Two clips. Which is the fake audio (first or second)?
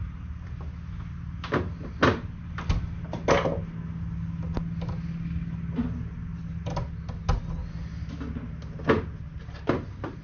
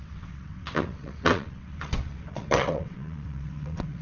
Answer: second